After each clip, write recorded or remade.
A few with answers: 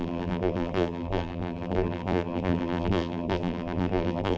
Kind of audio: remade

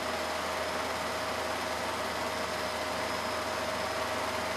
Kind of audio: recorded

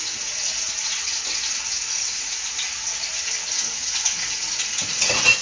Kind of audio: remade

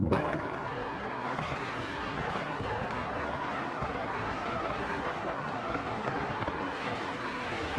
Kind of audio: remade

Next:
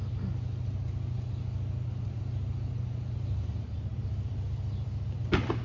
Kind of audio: recorded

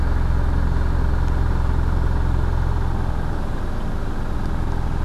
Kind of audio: recorded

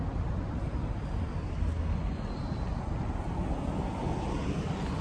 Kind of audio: recorded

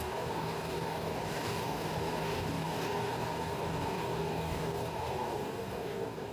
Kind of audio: remade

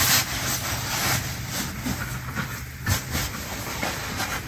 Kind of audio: recorded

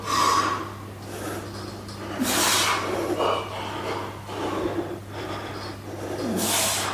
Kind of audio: recorded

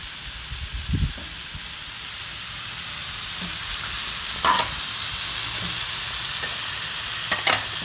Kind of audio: recorded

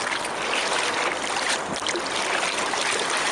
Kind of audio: recorded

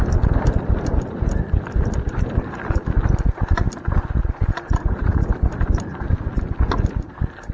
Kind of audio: recorded